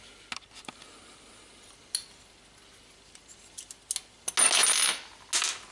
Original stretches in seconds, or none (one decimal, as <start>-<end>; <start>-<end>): 0.0-5.7

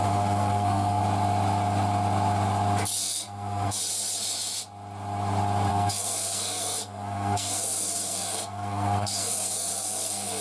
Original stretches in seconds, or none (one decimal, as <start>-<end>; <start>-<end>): 1.0-3.0; 3.8-5.7

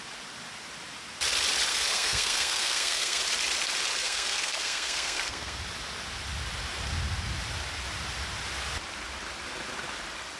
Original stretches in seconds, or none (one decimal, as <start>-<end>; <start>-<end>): 0.0-1.7; 3.2-4.0; 5.6-10.4

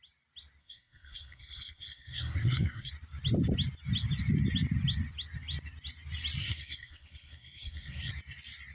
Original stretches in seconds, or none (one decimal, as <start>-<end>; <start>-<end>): 0.0-0.6; 2.9-6.4; 8.1-8.7

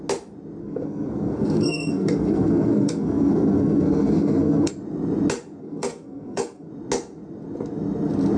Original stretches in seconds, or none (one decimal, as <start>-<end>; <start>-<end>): 0.0-0.6; 4.7-5.6; 6.7-8.4

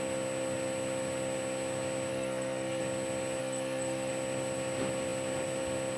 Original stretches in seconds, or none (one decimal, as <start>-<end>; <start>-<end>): 0.0-2.1; 2.8-3.4; 4.1-6.0

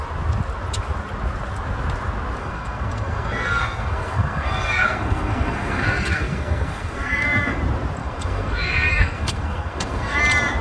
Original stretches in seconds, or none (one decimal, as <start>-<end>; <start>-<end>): 0.0-2.4; 7.6-8.0; 10.2-10.6

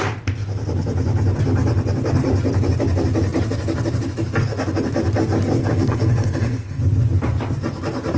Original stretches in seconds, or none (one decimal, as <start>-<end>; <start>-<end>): 0.0-5.6; 6.8-8.2